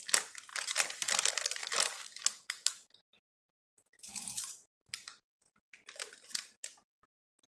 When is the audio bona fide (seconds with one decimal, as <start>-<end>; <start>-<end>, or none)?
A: 0.0-1.6; 5.5-7.5